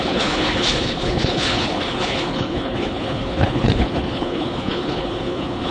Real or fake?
fake